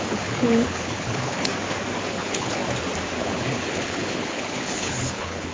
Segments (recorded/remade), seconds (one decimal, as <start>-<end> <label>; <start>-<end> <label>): 0.0-1.5 remade; 1.5-2.1 recorded; 2.1-2.6 remade; 2.6-3.2 recorded; 3.2-5.5 remade